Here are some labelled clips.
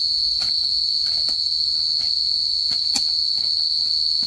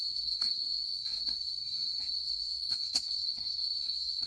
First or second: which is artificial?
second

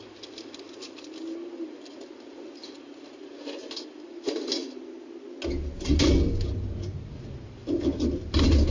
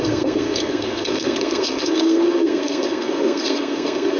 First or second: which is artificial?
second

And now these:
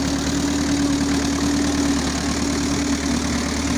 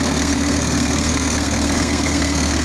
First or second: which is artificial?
second